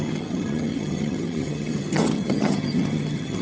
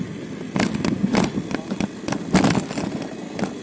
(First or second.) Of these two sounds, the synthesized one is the first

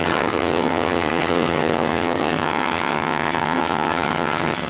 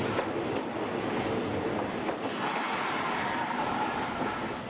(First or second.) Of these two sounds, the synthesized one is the first